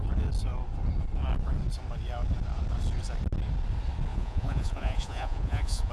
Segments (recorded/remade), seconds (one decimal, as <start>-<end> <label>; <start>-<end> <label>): 0.0-4.1 recorded; 4.1-5.9 remade